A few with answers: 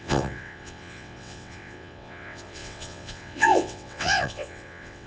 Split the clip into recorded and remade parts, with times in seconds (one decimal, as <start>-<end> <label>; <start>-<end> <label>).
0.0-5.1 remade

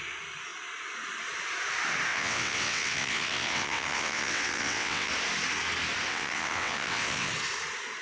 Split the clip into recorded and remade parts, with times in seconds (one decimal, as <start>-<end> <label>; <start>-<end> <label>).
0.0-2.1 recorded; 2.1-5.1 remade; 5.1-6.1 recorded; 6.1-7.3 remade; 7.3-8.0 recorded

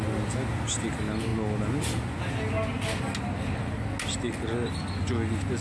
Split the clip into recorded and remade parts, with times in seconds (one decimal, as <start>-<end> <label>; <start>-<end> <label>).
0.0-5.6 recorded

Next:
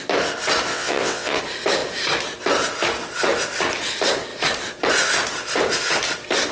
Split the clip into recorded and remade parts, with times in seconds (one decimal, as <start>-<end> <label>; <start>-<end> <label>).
0.0-0.7 recorded; 0.7-1.4 remade; 1.4-6.5 recorded

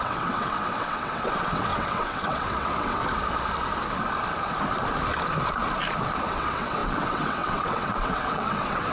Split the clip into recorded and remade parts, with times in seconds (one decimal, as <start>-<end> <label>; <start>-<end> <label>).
0.0-3.0 remade; 3.0-6.3 recorded; 6.3-8.9 remade

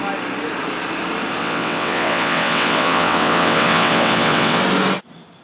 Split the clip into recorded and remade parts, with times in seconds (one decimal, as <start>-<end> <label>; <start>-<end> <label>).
0.0-1.4 recorded; 1.4-4.6 remade; 4.6-5.4 recorded

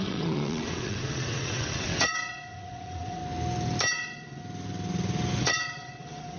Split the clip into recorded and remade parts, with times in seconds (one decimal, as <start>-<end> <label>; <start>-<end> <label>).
0.0-3.2 remade; 3.2-3.9 recorded; 3.9-4.4 remade; 4.4-5.4 recorded; 5.4-6.4 remade